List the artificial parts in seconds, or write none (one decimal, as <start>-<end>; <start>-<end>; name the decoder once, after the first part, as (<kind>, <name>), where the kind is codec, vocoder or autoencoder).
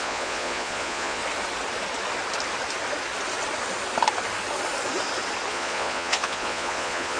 0.0-1.2 (vocoder, Vocos); 5.5-7.2